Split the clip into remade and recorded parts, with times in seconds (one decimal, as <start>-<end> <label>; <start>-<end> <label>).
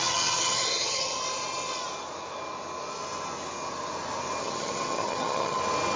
0.0-1.2 remade; 1.2-4.4 recorded; 4.4-5.6 remade; 5.6-6.0 recorded